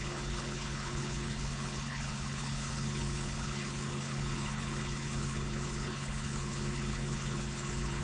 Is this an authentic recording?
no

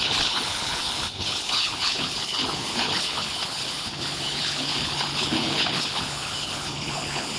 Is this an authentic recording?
no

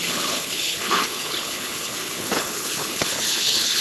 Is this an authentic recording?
no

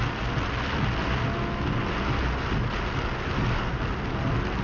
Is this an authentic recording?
yes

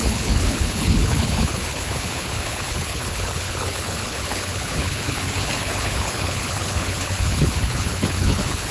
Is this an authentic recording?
no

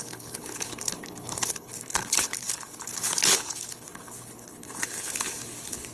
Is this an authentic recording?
no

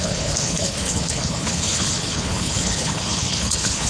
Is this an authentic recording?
no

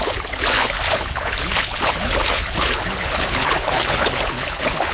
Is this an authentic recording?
no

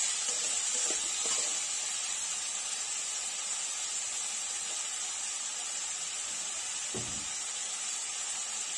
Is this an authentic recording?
yes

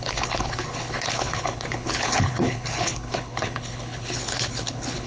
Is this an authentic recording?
no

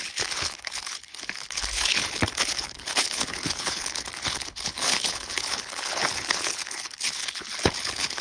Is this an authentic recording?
no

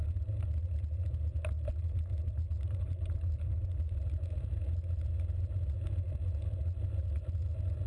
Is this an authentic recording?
yes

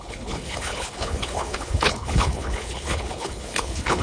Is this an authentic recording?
no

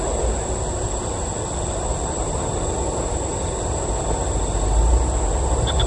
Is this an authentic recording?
yes